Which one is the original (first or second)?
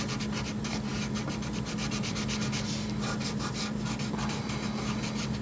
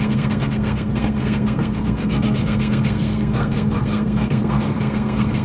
first